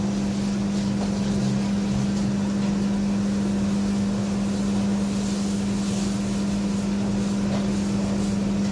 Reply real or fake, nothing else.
real